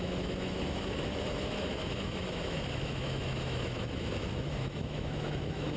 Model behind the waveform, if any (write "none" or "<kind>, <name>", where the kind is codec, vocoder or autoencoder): autoencoder, DAC-VAE